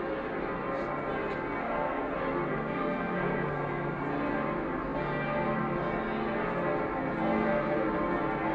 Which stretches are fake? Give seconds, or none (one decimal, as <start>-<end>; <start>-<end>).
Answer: 1.6-2.1; 2.5-4.0